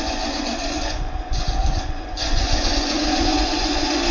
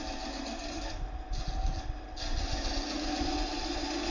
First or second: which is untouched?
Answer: second